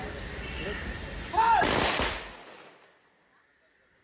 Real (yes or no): yes